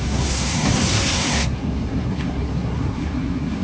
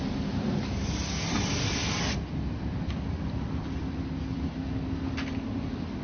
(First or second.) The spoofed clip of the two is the first